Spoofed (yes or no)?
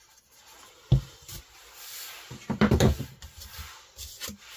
no